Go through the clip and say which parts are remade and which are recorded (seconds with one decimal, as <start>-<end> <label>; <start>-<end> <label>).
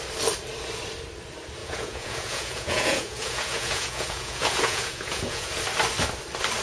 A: 0.0-1.6 recorded; 1.6-5.6 remade; 5.6-6.6 recorded